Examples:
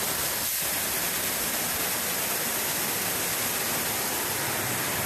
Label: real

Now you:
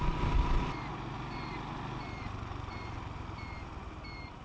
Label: real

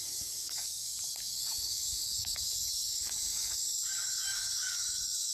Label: fake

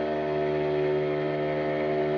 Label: real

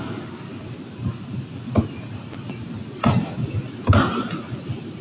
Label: real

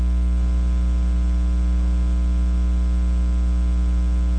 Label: real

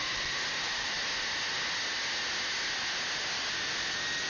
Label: real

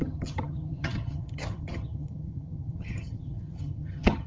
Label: fake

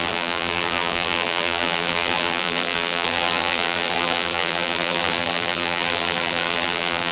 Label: fake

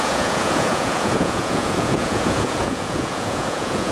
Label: fake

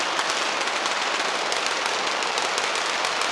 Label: real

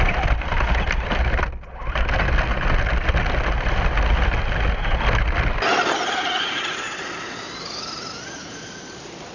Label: real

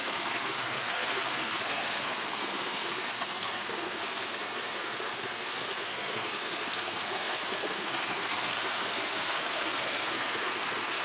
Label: fake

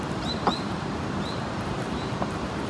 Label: fake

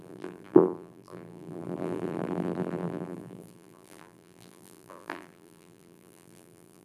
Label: fake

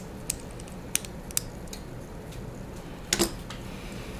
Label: real